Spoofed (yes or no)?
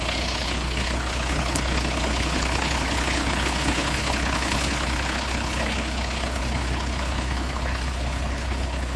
yes